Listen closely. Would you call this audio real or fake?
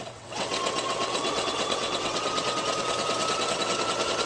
fake